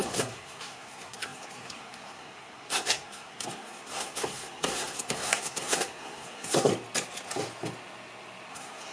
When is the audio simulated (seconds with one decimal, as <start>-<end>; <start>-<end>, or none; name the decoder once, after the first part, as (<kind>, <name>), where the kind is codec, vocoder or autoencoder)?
0.0-6.7 (codec, SNAC); 8.5-8.9